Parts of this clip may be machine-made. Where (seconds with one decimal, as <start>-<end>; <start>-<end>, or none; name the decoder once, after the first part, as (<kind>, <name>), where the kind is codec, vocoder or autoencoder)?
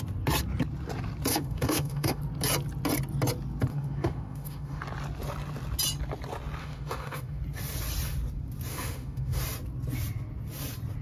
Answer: 1.3-2.2 (autoencoder, DAC-VAE); 3.7-4.8; 6.6-7.4; 8.7-9.4